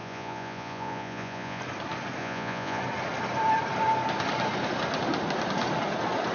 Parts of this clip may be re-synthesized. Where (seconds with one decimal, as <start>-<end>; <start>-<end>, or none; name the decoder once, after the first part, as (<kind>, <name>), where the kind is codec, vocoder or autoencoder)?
0.0-1.6 (vocoder, Vocos); 2.2-2.8